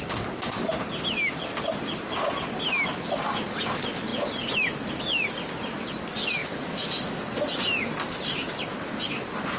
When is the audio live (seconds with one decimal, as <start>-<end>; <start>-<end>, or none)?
0.0-9.6